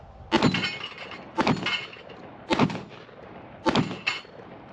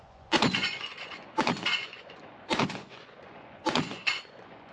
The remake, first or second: second